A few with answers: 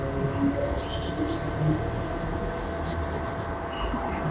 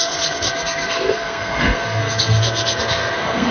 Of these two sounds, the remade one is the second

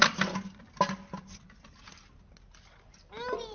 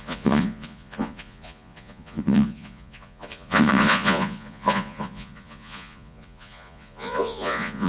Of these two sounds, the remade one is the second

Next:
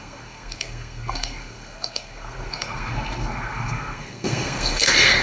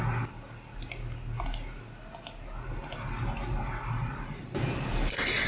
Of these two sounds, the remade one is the first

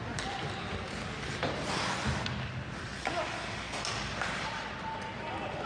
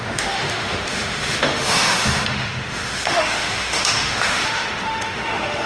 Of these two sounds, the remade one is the second